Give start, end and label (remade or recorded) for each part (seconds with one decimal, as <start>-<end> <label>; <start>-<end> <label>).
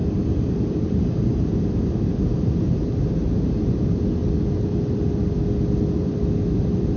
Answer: 0.0-3.8 remade; 3.8-7.0 recorded